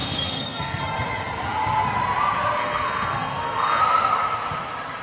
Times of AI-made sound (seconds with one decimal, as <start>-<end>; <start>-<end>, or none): 0.0-0.8; 2.6-3.8